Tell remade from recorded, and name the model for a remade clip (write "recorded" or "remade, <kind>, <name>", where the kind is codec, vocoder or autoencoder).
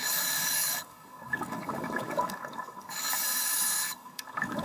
remade, codec, DAC